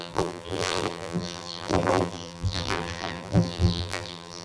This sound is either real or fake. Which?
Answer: fake